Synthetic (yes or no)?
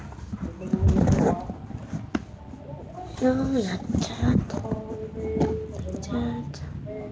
no